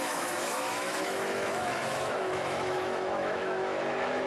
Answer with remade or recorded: remade